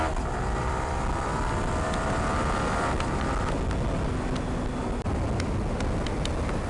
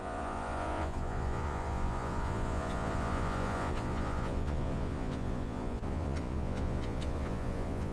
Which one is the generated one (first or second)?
second